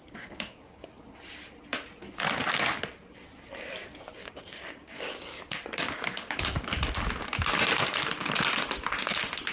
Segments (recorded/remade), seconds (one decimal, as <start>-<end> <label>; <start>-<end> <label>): 0.0-0.9 remade; 0.9-4.2 recorded; 4.2-5.4 remade; 5.4-9.5 recorded